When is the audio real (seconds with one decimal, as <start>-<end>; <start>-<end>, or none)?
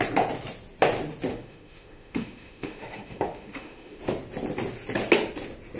0.0-1.3; 4.0-5.8